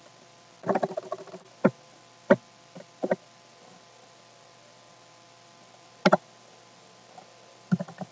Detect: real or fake real